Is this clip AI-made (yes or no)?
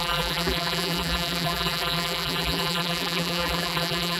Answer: yes